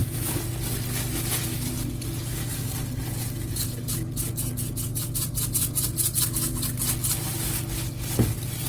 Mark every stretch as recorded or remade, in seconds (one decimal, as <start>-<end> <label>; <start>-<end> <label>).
0.0-0.5 remade; 0.5-3.0 recorded; 3.0-6.2 remade; 6.2-8.7 recorded

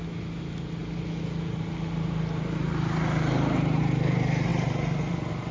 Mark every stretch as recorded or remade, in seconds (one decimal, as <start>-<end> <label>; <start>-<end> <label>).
0.0-5.5 recorded